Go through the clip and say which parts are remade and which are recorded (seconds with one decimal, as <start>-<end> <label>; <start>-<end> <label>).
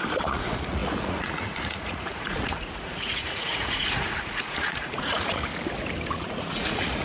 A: 0.0-5.5 remade; 5.5-6.1 recorded; 6.1-7.0 remade